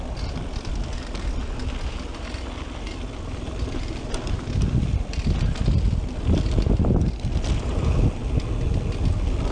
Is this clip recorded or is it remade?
recorded